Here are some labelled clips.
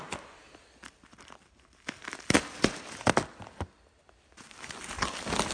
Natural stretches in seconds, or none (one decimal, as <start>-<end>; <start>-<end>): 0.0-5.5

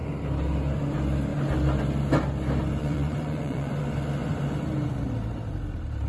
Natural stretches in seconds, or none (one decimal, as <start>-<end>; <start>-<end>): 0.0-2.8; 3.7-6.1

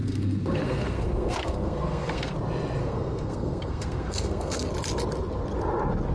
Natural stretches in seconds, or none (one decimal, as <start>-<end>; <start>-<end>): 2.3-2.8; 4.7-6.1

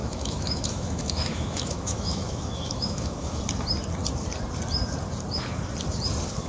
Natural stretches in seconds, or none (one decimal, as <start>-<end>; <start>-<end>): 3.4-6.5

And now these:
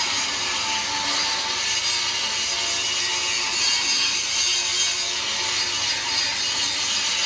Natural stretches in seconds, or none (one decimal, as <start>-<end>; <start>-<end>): 0.0-7.3